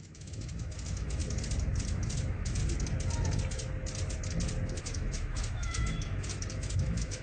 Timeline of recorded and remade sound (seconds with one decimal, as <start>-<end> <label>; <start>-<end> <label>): 0.0-1.2 remade; 1.2-1.9 recorded; 1.9-2.6 remade; 2.6-4.8 recorded; 4.8-7.2 remade